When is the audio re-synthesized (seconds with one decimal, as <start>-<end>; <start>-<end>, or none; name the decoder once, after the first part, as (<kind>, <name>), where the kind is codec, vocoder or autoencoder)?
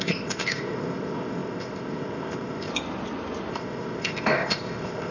0.0-2.7 (codec, ZipCodec); 3.5-5.1